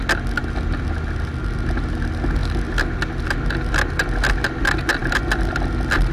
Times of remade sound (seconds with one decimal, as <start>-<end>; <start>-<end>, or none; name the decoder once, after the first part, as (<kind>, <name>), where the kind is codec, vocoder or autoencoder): none